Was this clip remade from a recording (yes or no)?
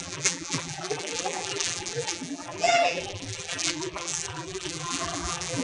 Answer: yes